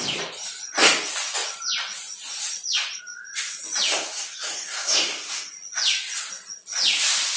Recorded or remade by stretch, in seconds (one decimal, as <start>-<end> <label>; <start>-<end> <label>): 0.0-3.9 recorded; 3.9-5.5 remade; 5.5-7.4 recorded

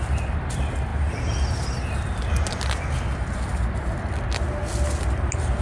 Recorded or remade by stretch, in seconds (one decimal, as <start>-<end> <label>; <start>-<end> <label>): 0.0-5.6 recorded

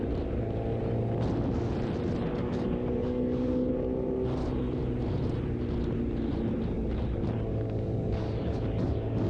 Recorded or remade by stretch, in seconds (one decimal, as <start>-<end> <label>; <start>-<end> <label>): 0.0-2.3 recorded; 2.3-3.7 remade; 3.7-7.5 recorded; 7.5-9.3 remade

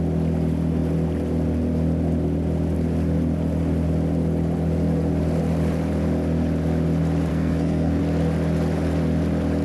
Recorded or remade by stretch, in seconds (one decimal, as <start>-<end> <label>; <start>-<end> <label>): 0.0-7.3 recorded; 7.3-8.0 remade; 8.0-9.6 recorded

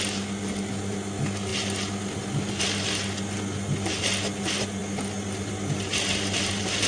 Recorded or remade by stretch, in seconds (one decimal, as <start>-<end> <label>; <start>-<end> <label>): 0.0-6.9 recorded

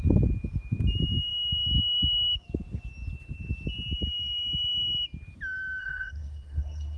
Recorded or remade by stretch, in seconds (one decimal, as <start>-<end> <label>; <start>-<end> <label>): 0.0-5.8 recorded; 5.8-7.0 remade

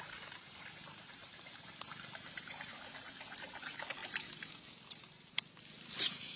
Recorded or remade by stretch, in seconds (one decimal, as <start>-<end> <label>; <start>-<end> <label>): 0.0-2.7 remade; 2.7-3.4 recorded; 3.4-4.0 remade; 4.0-4.9 recorded; 4.9-6.4 remade

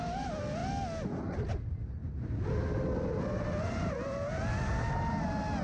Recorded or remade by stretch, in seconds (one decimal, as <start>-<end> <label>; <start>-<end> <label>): 0.0-5.6 recorded